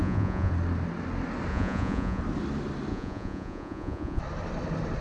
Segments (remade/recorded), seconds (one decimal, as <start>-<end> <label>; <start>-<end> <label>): 0.0-0.5 remade; 0.5-1.5 recorded; 1.5-2.2 remade; 2.2-2.9 recorded; 2.9-4.2 remade; 4.2-5.0 recorded